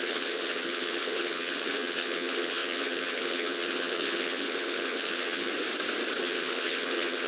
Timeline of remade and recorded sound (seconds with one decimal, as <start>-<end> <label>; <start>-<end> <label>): 0.0-5.5 remade; 5.5-6.2 recorded; 6.2-7.3 remade